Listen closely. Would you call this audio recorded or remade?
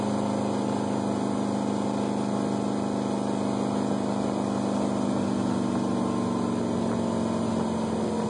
recorded